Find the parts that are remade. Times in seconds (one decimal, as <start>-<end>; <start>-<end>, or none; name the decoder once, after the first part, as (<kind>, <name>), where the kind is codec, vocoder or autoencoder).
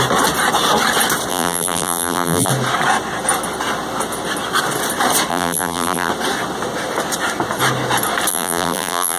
1.3-2.5 (vocoder, BigVGAN v2); 5.3-6.1; 8.3-9.2